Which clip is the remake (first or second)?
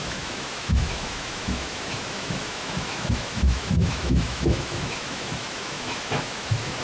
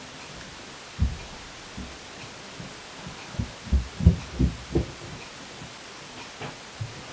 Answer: first